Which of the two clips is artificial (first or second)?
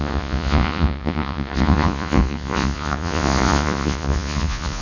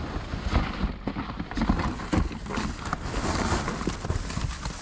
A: first